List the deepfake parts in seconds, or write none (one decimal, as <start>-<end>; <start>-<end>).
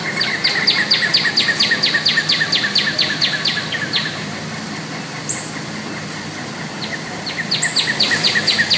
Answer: none